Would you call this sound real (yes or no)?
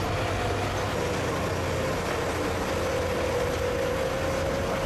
yes